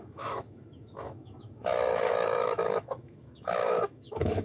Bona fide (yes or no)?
no